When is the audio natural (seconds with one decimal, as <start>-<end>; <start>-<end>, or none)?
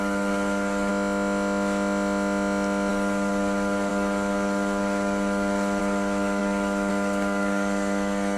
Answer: 0.9-2.9